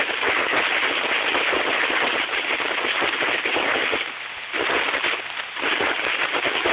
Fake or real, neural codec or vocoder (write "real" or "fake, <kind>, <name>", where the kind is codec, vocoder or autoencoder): real